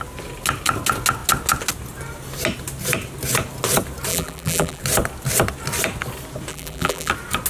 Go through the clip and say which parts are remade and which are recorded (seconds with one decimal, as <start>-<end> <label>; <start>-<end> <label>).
0.0-4.1 recorded; 4.1-4.8 remade; 4.8-6.5 recorded; 6.5-7.1 remade; 7.1-7.5 recorded